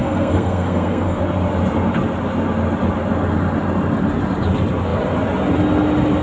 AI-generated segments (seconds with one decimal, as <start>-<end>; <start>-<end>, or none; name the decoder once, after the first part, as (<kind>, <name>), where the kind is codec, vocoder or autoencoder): 0.0-1.2 (codec, SNAC)